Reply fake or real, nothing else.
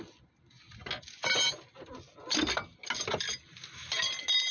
real